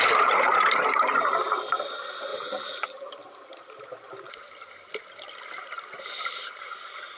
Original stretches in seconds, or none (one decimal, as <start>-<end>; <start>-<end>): 0.0-2.3; 3.1-7.2